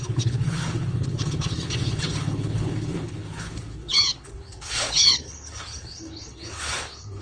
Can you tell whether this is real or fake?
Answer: fake